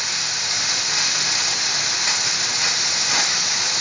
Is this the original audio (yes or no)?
yes